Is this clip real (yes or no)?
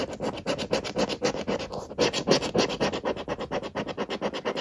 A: yes